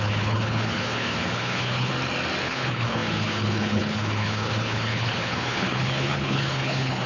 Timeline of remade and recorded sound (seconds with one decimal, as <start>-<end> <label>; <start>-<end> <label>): 0.0-1.9 remade; 1.9-2.4 recorded; 2.4-7.1 remade